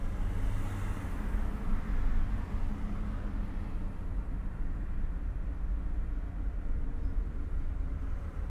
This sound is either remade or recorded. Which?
recorded